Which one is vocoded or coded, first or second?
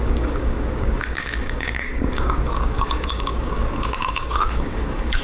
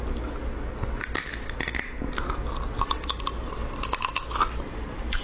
first